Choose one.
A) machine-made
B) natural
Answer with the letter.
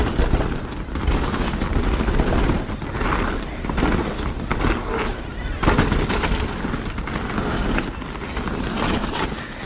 B